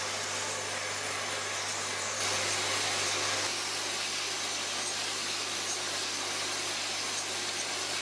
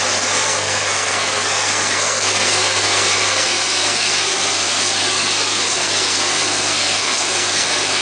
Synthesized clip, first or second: second